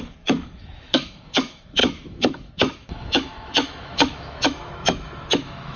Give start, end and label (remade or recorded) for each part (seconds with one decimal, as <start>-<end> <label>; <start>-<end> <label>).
0.0-5.8 remade